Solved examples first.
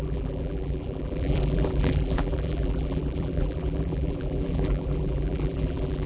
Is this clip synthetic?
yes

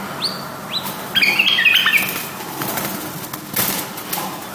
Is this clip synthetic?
no